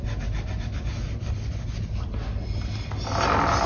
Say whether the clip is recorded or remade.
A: recorded